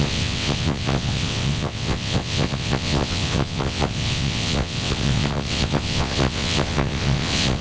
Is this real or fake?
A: fake